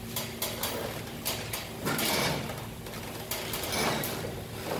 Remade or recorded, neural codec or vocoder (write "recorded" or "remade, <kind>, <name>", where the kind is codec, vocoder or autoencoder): recorded